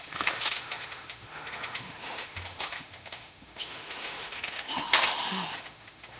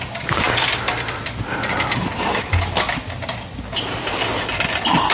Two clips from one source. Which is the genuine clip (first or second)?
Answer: second